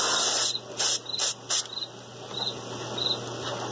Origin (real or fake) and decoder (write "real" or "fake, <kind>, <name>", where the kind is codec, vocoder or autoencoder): real